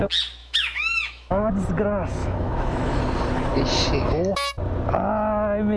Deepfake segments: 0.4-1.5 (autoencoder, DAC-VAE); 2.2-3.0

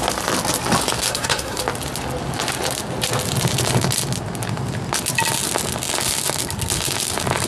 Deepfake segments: 1.1-1.6 (codec, SNAC)

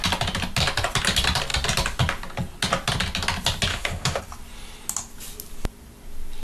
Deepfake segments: 3.7-4.2 (autoencoder, DAC-VAE)